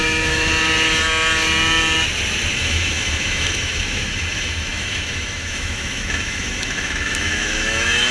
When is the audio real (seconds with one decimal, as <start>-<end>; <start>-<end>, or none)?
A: 0.5-2.5